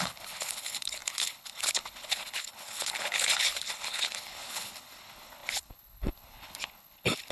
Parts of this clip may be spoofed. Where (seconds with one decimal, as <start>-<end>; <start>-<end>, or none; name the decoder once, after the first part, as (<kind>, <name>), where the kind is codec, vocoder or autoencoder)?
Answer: 0.0-7.3 (codec, HILCodec)